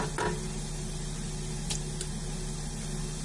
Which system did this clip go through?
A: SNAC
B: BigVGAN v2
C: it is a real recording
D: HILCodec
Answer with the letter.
C